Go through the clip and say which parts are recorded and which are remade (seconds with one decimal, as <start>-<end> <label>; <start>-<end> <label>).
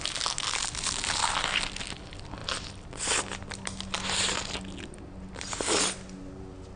0.0-6.8 recorded